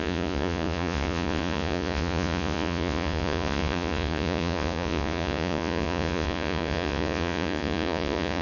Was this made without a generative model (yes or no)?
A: no